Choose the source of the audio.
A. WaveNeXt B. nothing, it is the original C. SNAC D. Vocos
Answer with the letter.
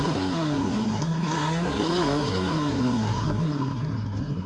C